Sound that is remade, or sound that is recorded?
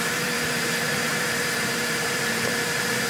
remade